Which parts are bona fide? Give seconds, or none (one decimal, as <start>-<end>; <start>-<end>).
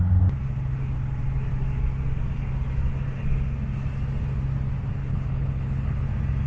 0.0-5.0; 6.1-6.5